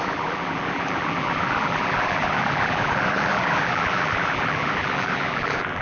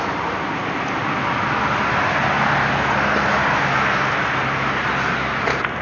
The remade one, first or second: first